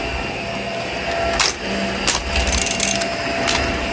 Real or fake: real